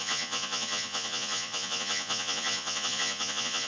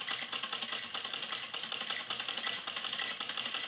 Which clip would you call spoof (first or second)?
first